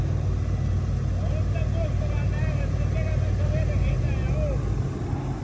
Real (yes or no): yes